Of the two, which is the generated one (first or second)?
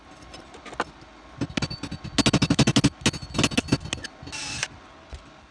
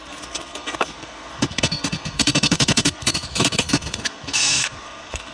second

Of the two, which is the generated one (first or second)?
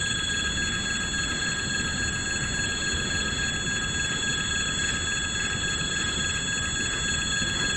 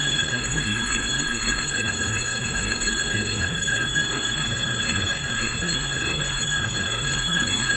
second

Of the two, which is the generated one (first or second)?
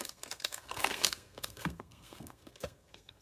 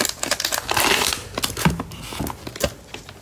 first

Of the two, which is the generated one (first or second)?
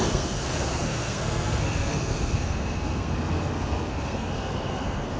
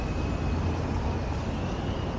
first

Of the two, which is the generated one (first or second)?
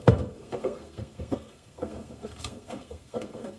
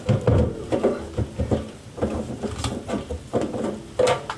first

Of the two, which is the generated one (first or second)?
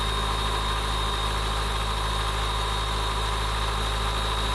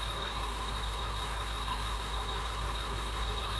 second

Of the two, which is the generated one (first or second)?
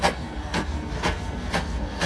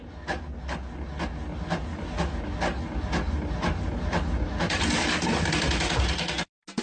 first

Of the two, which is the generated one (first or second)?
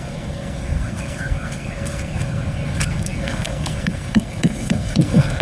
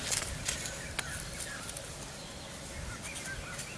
first